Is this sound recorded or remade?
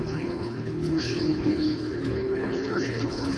remade